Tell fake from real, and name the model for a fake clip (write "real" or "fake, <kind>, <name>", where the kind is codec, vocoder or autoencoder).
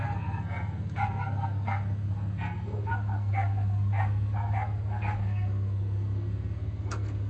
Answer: fake, codec, SNAC